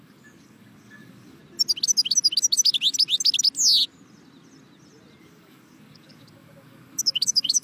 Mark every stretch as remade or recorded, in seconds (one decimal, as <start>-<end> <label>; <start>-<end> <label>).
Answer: 0.0-1.4 remade; 1.4-5.2 recorded; 5.2-7.6 remade